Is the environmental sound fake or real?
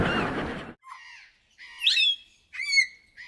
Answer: real